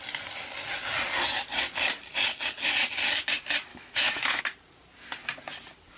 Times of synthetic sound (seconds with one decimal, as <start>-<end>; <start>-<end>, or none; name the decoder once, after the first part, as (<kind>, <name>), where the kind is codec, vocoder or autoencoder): 3.7-4.4 (autoencoder, DAC-VAE)